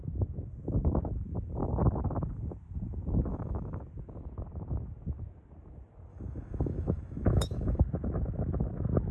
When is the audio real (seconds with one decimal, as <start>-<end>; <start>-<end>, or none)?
0.0-3.3; 3.8-6.1; 7.8-9.1